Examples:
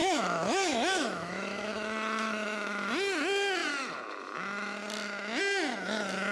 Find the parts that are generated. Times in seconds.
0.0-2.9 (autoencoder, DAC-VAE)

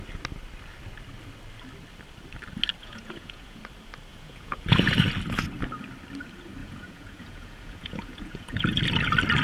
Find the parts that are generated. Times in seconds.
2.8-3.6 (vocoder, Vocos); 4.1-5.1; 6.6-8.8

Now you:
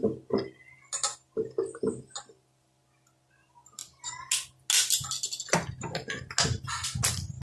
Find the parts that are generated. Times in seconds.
none

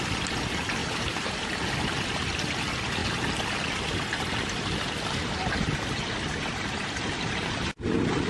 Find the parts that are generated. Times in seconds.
0.8-1.5 (vocoder, BigVGAN v2)

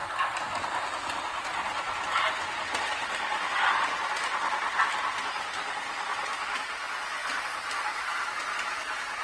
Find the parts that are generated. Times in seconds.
none

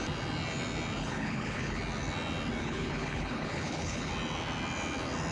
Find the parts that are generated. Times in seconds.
1.0-1.8 (codec, HILCodec); 2.6-4.1

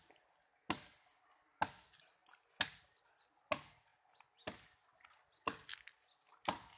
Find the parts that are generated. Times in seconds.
none